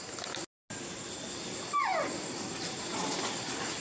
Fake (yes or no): no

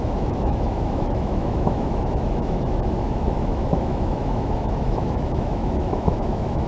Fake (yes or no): yes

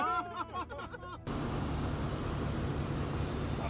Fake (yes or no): no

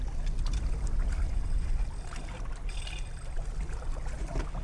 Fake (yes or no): no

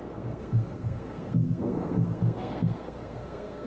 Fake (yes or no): yes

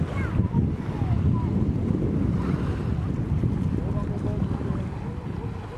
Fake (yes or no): no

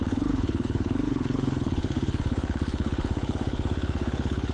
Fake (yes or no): yes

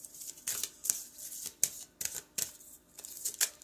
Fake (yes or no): no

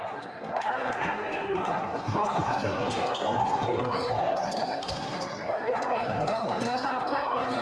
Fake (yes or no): yes